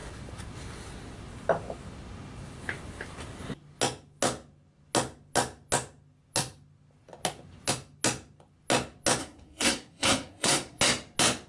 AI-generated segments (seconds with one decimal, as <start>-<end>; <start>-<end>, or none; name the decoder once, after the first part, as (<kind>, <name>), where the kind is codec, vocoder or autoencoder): 9.2-10.8 (codec, SNAC)